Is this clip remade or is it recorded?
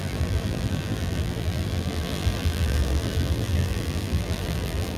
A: remade